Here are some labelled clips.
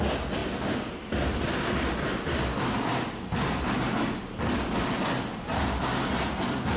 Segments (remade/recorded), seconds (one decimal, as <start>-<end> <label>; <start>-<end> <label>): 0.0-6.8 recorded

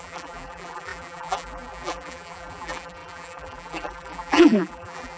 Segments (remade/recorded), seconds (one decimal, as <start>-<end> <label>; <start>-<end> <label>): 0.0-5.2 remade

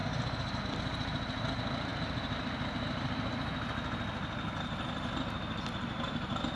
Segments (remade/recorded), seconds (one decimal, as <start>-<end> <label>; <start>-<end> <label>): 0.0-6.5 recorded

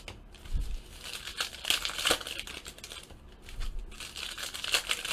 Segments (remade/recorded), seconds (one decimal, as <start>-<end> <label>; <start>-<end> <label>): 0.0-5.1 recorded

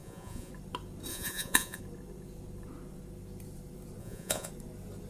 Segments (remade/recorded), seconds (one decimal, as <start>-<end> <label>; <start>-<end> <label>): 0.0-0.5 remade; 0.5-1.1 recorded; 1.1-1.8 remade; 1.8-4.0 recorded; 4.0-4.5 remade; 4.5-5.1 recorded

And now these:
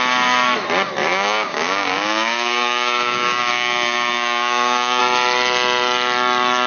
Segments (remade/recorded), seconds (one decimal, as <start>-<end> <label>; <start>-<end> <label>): 0.0-1.0 recorded; 1.0-5.0 remade; 5.0-6.7 recorded

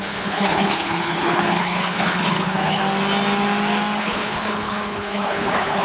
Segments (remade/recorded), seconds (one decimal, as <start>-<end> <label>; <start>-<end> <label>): 0.0-2.8 remade; 2.8-4.0 recorded; 4.0-5.8 remade

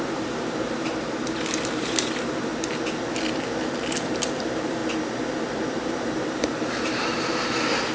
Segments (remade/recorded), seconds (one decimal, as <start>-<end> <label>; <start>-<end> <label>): 0.0-0.9 remade; 0.9-1.5 recorded; 1.5-2.5 remade; 2.5-3.6 recorded; 3.6-4.8 remade; 4.8-5.9 recorded; 5.9-7.9 remade